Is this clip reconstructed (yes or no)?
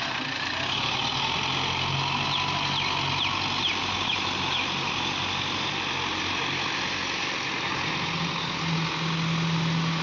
no